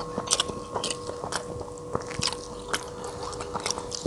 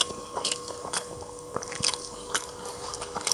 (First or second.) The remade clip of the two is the second